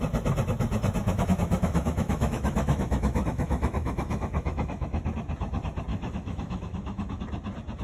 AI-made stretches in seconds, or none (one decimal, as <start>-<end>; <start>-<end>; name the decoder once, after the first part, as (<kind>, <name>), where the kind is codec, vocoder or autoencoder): 1.0-5.0 (autoencoder, DAC-VAE); 5.9-7.2